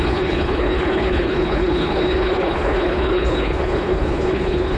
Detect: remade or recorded remade